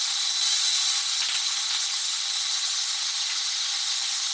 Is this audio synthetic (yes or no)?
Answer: no